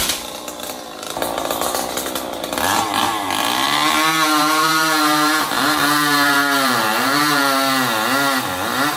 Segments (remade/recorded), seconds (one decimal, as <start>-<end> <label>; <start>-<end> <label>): 0.0-4.1 recorded; 4.1-7.4 remade; 7.4-9.0 recorded